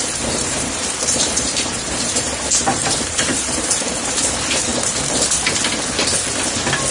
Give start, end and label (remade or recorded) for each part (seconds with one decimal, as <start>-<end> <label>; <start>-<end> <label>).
0.0-4.7 remade; 4.7-6.9 recorded